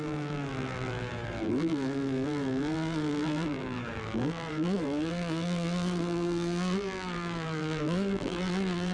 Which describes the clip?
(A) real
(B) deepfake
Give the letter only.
B